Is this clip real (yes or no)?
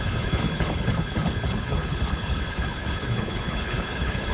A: no